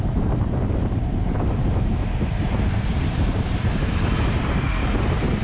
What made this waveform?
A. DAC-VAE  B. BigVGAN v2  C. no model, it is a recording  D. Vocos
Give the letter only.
B